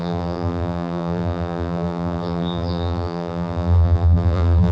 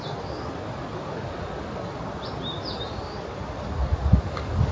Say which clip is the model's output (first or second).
first